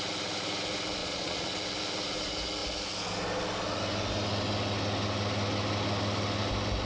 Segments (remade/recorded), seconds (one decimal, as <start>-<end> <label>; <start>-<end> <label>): 0.0-1.0 recorded; 1.0-1.5 remade; 1.5-6.9 recorded